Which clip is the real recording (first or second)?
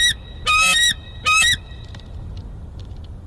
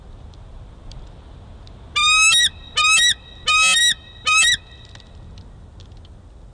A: second